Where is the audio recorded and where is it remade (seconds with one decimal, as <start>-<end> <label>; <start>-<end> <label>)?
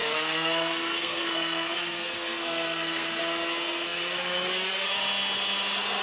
0.0-3.2 remade; 3.2-6.0 recorded